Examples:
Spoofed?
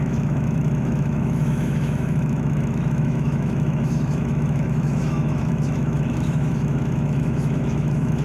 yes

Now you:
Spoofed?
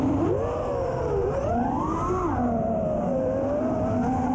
no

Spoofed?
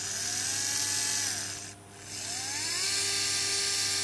no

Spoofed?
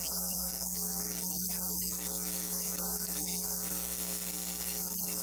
yes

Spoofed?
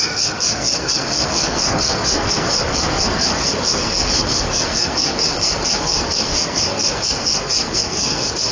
yes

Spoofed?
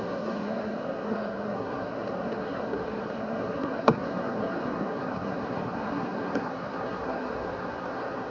yes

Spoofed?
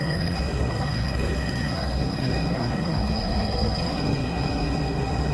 yes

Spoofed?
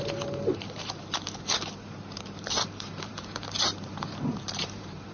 yes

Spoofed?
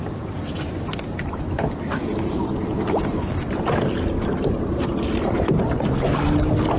no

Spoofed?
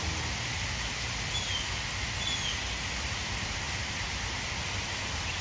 no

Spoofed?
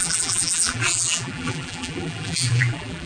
yes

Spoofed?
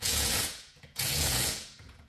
yes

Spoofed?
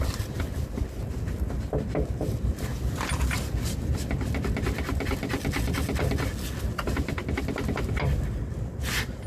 no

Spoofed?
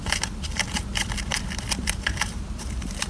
yes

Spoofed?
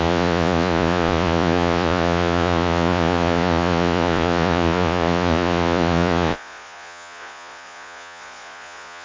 yes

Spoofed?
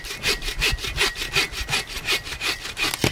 no